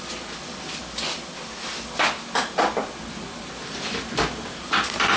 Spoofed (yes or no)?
no